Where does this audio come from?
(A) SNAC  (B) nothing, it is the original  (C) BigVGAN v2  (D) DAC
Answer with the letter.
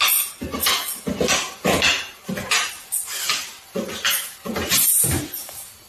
B